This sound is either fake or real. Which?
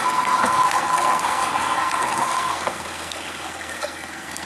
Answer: fake